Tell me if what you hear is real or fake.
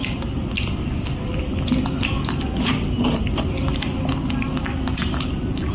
real